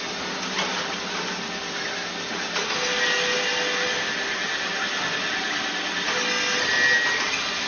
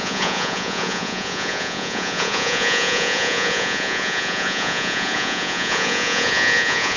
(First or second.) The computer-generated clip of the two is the second